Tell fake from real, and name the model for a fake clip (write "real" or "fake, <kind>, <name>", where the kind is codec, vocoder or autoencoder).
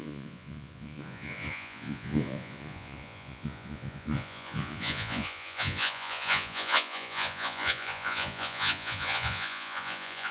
fake, vocoder, Vocos